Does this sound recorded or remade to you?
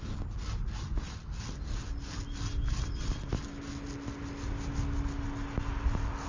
recorded